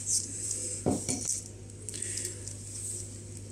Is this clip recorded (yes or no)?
yes